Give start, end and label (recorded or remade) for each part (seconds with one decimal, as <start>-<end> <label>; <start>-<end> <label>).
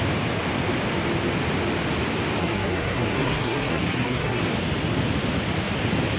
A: 0.0-2.4 recorded; 2.4-4.4 remade; 4.4-6.2 recorded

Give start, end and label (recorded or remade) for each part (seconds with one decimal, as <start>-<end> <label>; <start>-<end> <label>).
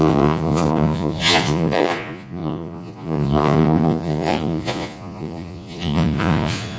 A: 0.0-6.8 remade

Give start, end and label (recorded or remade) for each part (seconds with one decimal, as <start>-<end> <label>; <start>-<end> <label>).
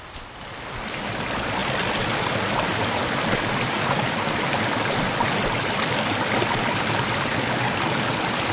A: 0.0-1.6 recorded; 1.6-3.1 remade; 3.1-8.5 recorded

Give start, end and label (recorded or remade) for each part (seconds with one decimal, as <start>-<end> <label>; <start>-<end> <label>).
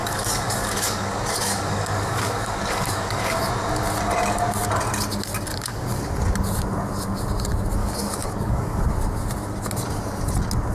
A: 0.0-3.4 remade; 3.4-5.5 recorded; 5.5-6.1 remade; 6.1-7.8 recorded; 7.8-8.8 remade; 8.8-10.7 recorded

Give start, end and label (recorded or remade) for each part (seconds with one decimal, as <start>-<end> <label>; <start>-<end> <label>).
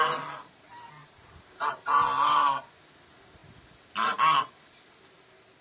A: 0.0-1.0 recorded; 1.0-1.7 remade; 1.7-5.6 recorded